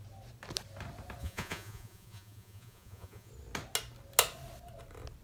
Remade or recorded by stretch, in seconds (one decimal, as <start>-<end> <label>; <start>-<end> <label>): 0.0-1.2 recorded; 1.2-3.3 remade; 3.3-5.2 recorded